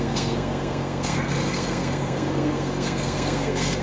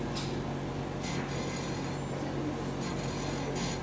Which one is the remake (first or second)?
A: first